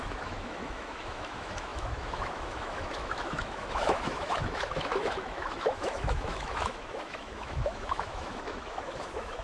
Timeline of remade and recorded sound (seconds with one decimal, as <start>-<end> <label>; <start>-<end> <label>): 0.0-9.4 remade